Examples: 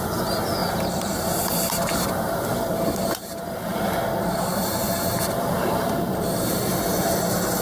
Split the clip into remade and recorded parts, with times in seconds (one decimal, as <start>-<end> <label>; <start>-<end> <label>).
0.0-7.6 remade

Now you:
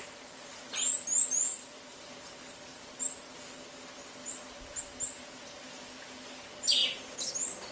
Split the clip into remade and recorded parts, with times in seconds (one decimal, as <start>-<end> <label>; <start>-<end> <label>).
0.0-1.5 recorded; 1.5-2.0 remade; 2.0-6.8 recorded; 6.8-7.3 remade; 7.3-7.7 recorded

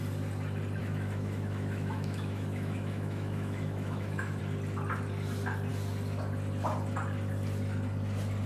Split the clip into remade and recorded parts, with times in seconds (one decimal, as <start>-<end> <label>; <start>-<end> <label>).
0.0-0.8 recorded; 0.8-4.4 remade; 4.4-8.5 recorded

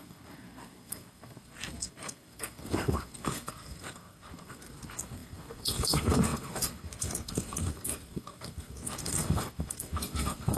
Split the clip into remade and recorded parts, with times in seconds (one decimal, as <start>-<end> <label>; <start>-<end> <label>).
0.0-10.6 remade